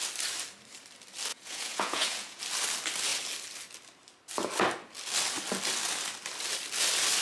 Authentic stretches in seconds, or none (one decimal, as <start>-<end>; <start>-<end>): 0.0-1.3; 2.4-7.2